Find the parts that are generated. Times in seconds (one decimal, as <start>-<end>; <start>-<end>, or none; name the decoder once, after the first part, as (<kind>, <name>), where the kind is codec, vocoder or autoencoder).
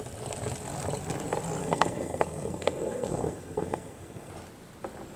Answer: 1.6-4.3 (codec, SNAC)